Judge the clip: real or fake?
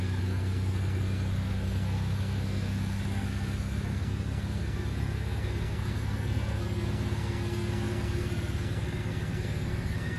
fake